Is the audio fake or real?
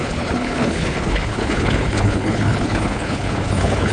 fake